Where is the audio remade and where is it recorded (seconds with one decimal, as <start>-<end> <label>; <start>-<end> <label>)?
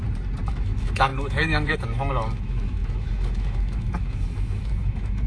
0.0-0.5 recorded; 0.5-5.3 remade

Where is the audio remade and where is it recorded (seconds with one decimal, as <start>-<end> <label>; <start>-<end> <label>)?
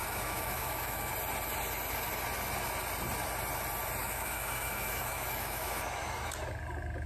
0.0-1.1 remade; 1.1-4.0 recorded; 4.0-6.2 remade; 6.2-7.1 recorded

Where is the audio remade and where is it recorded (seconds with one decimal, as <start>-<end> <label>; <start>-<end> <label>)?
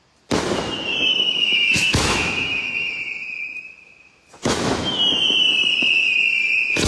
0.0-1.1 recorded; 1.1-3.0 remade; 3.0-4.4 recorded; 4.4-5.0 remade; 5.0-6.9 recorded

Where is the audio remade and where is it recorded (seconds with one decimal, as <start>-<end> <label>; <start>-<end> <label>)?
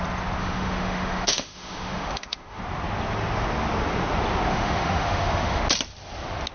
0.0-0.4 recorded; 0.4-2.6 remade; 2.6-4.5 recorded; 4.5-5.6 remade; 5.6-6.5 recorded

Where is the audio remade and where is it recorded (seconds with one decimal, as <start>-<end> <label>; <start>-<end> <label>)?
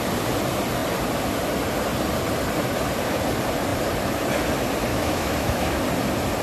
0.0-4.9 recorded; 4.9-5.8 remade; 5.8-6.4 recorded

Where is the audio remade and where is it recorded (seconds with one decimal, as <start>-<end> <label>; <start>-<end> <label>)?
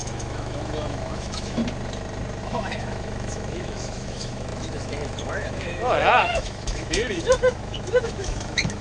0.0-1.6 remade; 1.6-2.4 recorded; 2.4-8.8 remade